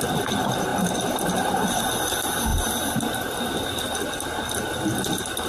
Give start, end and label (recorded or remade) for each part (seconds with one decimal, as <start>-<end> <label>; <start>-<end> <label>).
0.0-2.5 recorded; 2.5-3.4 remade; 3.4-5.5 recorded